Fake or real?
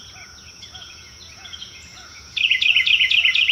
fake